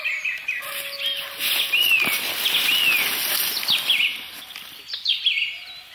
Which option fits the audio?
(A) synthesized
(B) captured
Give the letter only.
B